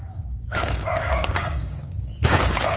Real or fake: fake